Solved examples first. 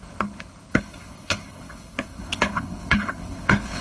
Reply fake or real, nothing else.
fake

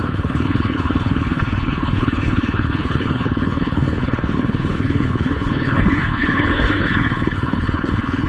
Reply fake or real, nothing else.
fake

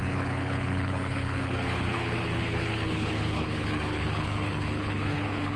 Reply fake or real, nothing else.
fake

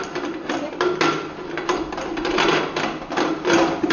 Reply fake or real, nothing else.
real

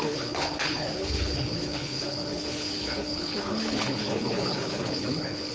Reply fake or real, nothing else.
fake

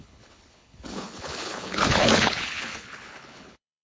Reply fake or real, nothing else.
fake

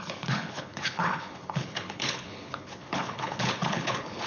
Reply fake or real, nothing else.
fake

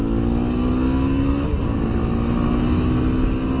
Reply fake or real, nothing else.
real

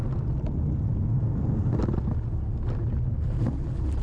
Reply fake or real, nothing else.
real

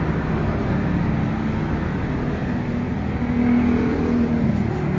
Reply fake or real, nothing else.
real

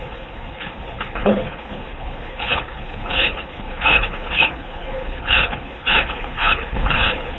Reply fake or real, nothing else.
fake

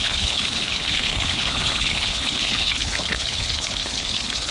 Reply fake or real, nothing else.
fake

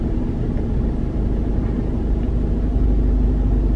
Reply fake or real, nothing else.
real